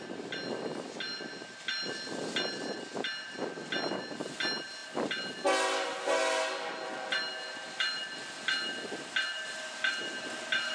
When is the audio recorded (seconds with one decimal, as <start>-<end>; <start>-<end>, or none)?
0.0-10.7